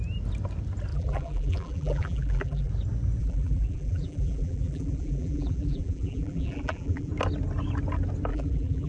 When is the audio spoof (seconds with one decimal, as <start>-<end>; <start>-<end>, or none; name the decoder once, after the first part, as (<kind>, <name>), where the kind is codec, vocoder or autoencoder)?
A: 0.9-2.7 (vocoder, BigVGAN v2); 3.2-7.1; 8.3-8.9